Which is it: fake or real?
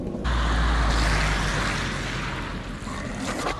real